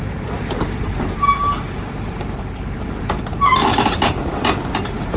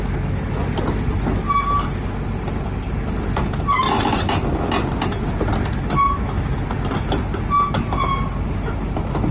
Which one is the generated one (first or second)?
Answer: first